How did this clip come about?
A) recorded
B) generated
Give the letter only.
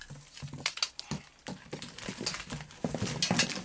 A